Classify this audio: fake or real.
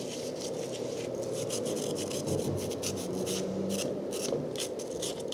real